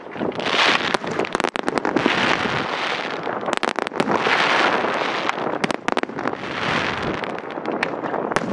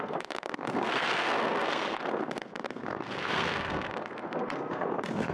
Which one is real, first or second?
first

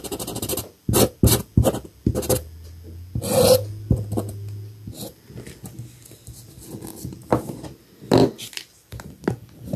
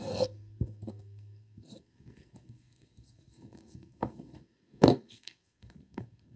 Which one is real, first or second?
first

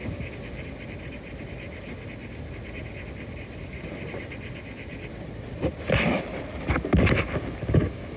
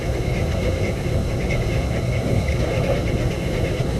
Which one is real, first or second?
first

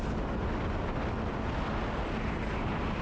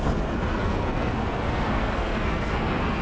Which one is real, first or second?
first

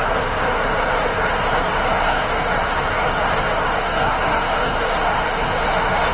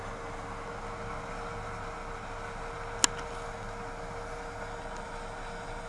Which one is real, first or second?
second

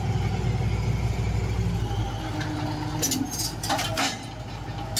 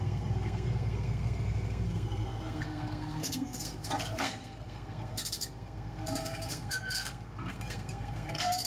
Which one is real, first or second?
first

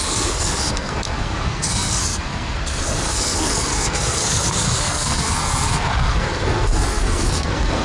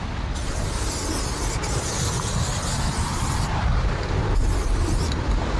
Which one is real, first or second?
second